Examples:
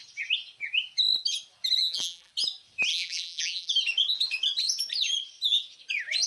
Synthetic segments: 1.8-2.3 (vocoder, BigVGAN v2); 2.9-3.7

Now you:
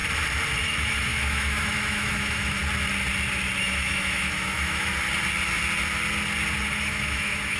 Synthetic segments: 0.6-2.6 (autoencoder, DAC-VAE); 3.6-4.9; 6.8-7.6

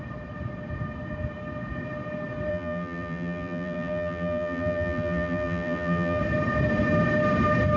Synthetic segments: 2.5-6.2 (vocoder, BigVGAN v2)

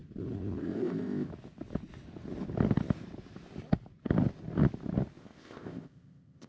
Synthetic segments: 0.6-1.3 (codec, ZipCodec); 5.2-6.5